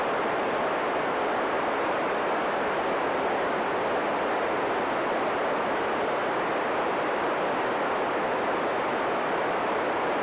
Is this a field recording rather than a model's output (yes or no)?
yes